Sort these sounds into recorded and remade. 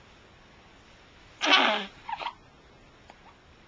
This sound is recorded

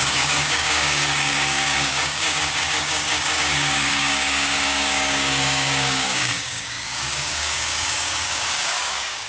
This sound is remade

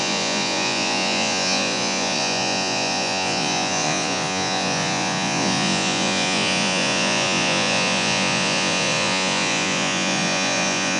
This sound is remade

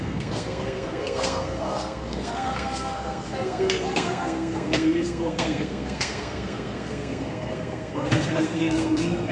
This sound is remade